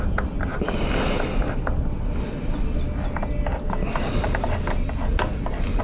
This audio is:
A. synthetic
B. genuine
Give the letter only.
B